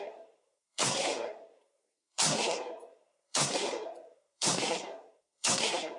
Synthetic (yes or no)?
yes